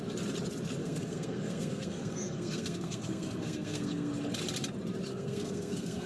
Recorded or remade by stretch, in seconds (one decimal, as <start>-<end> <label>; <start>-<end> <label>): 0.0-0.8 recorded; 0.8-4.1 remade; 4.1-5.1 recorded; 5.1-6.1 remade

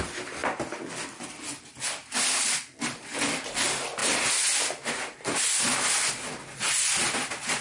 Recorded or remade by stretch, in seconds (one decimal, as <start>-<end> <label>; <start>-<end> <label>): 0.0-7.6 recorded